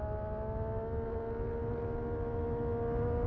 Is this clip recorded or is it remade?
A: recorded